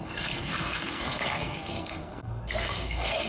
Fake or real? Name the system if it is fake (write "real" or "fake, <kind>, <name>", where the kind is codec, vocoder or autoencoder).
fake, codec, SNAC